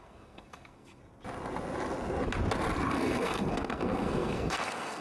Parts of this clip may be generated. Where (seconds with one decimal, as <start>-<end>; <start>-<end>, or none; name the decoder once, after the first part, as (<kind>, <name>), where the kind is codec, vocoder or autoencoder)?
0.0-1.0 (codec, SNAC); 2.9-5.0